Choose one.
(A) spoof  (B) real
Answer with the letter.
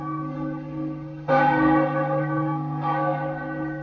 A